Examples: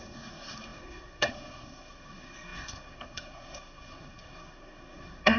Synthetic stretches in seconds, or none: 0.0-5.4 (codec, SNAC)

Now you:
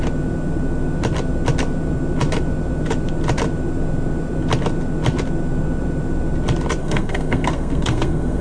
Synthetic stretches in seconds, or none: 6.8-8.4 (codec, SNAC)